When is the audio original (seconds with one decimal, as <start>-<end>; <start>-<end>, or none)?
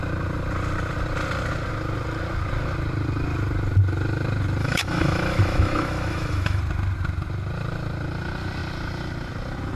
0.0-4.6; 6.6-9.8